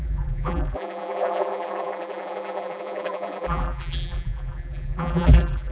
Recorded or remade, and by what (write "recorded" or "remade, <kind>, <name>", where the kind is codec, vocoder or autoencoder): remade, vocoder, BigVGAN v2